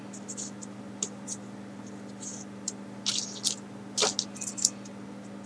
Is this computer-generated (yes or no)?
no